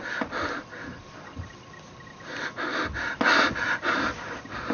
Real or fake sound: real